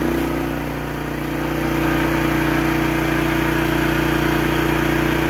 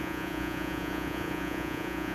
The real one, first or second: first